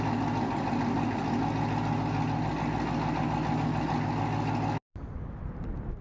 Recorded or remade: recorded